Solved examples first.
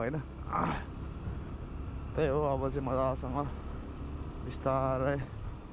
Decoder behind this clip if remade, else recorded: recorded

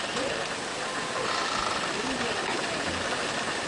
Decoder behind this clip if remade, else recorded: recorded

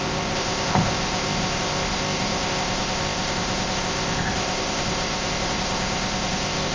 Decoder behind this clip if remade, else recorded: remade, codec, ZipCodec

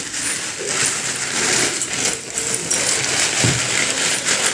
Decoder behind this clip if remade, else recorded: recorded